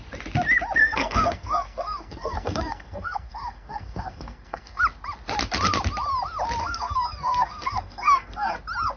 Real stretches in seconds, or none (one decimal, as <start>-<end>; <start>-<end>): 0.0-0.8; 4.8-6.6; 8.5-9.0